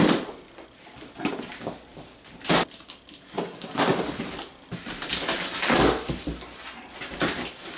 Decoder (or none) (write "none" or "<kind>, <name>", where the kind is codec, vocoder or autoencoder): none